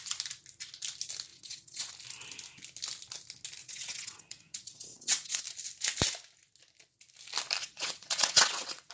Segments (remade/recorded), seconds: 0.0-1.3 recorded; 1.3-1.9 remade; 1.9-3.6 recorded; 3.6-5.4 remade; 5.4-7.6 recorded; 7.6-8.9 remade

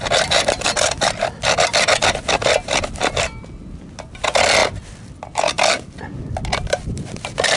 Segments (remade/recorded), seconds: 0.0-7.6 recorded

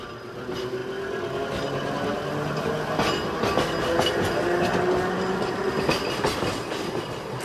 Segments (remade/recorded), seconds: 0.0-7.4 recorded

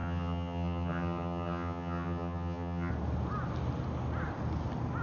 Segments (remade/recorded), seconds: 0.0-2.9 remade; 2.9-5.0 recorded

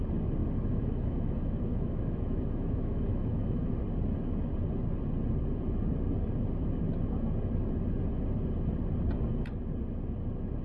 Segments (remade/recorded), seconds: 0.0-0.4 recorded; 0.4-3.7 remade; 3.7-10.6 recorded